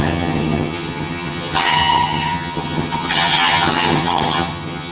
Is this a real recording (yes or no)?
no